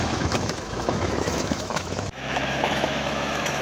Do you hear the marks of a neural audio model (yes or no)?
yes